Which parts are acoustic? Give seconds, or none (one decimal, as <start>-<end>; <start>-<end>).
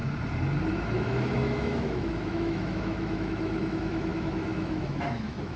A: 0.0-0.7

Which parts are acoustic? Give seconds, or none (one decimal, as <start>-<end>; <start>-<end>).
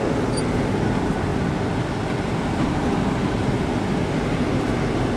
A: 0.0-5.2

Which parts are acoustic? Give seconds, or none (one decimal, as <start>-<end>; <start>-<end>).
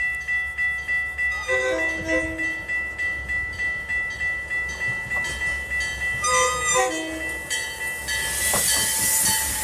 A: 0.0-9.6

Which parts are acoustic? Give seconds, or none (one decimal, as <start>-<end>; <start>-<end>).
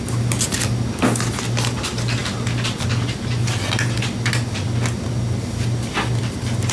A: 0.0-6.7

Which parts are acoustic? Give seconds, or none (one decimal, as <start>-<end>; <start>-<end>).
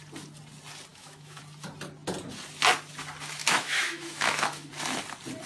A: 0.0-0.9; 1.4-3.4; 4.7-5.5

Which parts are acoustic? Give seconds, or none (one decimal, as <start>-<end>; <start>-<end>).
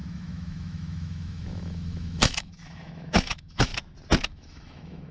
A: 3.7-4.2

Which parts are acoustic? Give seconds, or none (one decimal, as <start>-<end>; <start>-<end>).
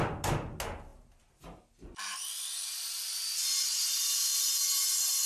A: 0.0-5.3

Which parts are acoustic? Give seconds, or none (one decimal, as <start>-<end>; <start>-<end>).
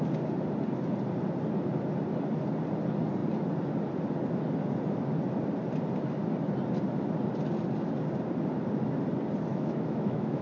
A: 0.0-9.5